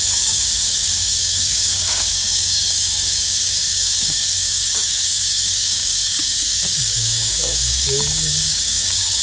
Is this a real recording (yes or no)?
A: no